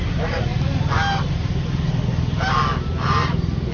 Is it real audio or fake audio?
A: real